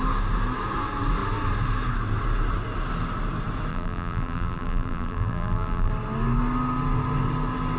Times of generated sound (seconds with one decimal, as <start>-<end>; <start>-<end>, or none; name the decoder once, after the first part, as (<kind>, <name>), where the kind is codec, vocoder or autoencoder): 3.7-5.9 (vocoder, BigVGAN v2)